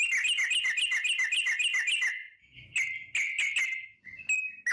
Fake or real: real